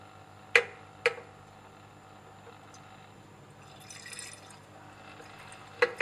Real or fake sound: real